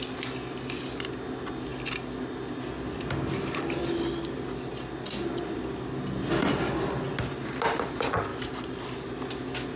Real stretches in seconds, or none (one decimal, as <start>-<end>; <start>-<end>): 0.0-8.3; 9.1-9.8